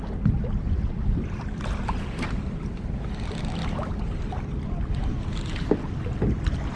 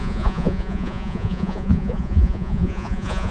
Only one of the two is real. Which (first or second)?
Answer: first